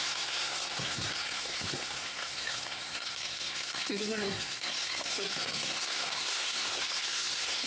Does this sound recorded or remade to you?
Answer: remade